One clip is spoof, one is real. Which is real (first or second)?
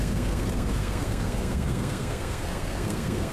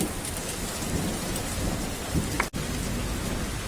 second